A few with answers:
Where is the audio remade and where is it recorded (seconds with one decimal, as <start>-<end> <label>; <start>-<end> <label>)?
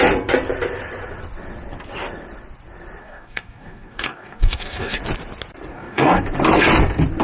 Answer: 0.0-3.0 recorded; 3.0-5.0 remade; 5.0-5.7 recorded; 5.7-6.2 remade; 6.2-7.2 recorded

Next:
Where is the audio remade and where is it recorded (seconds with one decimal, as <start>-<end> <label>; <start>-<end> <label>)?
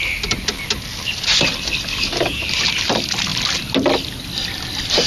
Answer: 0.0-1.9 recorded; 1.9-2.5 remade; 2.5-5.1 recorded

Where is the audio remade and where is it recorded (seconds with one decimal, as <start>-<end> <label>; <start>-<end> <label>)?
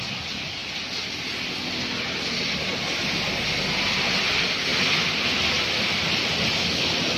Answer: 0.0-7.2 recorded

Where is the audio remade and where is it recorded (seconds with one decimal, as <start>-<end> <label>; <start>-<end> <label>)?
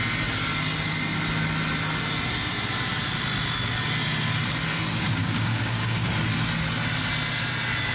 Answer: 0.0-5.2 recorded; 5.2-6.1 remade; 6.1-7.9 recorded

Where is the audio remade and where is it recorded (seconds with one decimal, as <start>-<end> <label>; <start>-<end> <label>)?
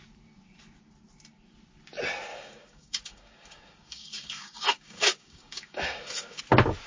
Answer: 0.0-2.3 recorded; 2.3-6.4 remade; 6.4-6.9 recorded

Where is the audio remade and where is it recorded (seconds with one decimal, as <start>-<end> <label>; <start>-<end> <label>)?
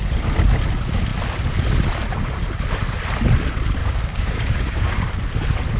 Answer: 0.0-3.8 recorded; 3.8-5.1 remade; 5.1-5.8 recorded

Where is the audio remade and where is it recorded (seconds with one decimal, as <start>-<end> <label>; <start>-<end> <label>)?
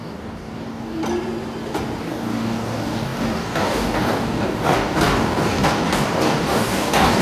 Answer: 0.0-1.0 remade; 1.0-2.0 recorded; 2.0-7.2 remade